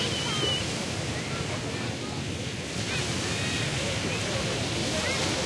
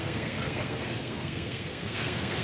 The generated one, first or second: second